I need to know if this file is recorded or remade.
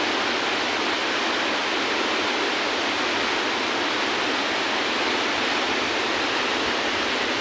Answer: recorded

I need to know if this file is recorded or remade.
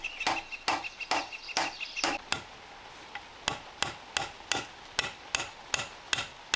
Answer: recorded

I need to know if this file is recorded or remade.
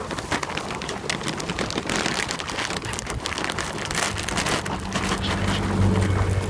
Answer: recorded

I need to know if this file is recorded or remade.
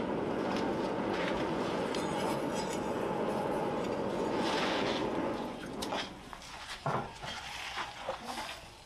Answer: remade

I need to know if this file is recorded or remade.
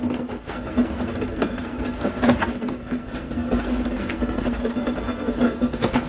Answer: remade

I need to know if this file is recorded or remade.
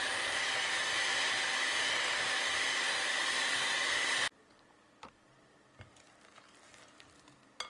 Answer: recorded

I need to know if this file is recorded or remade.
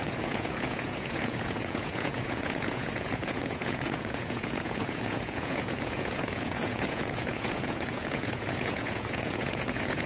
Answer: remade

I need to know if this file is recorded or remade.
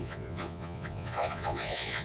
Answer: remade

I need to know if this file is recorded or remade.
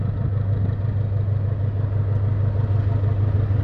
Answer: recorded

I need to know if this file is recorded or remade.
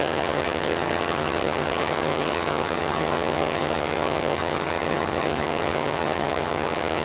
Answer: remade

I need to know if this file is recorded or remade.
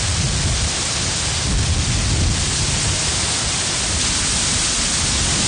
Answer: recorded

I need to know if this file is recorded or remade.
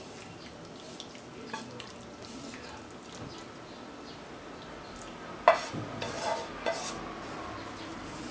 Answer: recorded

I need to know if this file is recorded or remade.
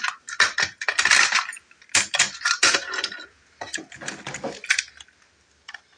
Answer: recorded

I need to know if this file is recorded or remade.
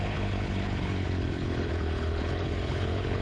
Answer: remade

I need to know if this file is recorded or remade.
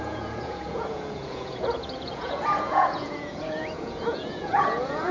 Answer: remade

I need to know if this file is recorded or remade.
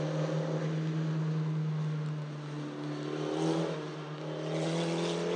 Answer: recorded